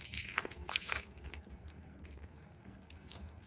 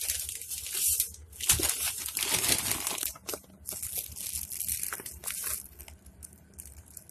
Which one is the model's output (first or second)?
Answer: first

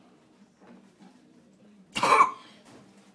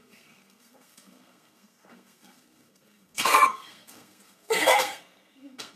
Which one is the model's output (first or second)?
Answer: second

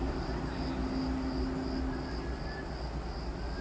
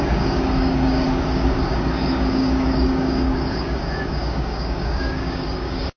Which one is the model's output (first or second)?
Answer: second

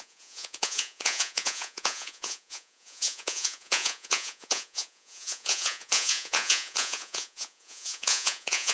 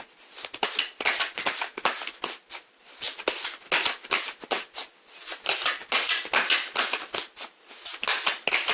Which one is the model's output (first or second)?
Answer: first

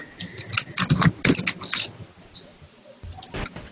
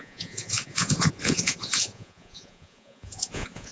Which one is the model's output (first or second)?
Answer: second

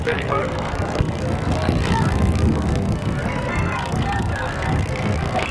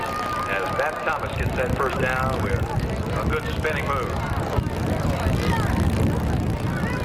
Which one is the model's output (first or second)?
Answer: first